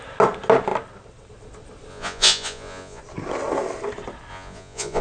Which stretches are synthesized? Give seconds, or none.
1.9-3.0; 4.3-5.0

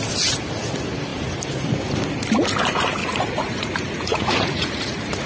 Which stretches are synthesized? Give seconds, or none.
3.0-5.3

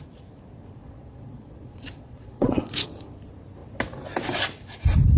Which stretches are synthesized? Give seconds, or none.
0.8-2.6

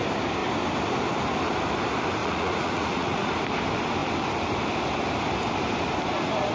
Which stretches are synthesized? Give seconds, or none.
2.2-3.3

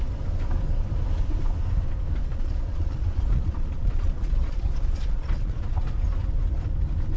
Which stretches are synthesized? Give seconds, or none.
2.3-5.8

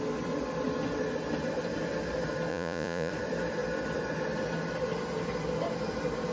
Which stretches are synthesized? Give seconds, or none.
2.5-3.1

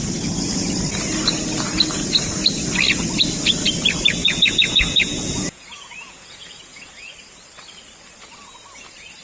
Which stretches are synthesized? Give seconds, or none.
4.2-6.9